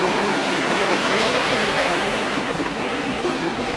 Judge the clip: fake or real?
fake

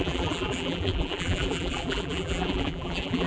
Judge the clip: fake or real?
fake